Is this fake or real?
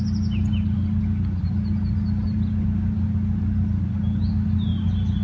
real